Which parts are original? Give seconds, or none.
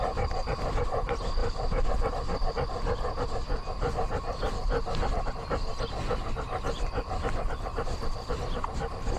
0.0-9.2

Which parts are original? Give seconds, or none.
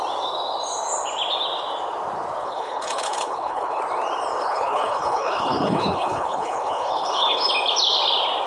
0.0-2.4; 3.8-4.4; 7.5-8.5